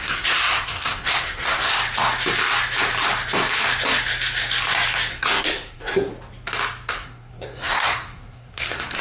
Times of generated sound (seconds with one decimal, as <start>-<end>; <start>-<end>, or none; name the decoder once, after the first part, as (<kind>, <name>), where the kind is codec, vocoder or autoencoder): 0.0-1.7 (codec, SNAC); 5.1-6.1; 6.9-9.0